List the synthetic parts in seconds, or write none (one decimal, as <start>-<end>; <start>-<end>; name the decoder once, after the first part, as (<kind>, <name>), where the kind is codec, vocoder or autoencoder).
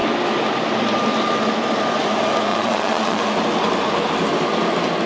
2.5-3.2 (vocoder, Vocos)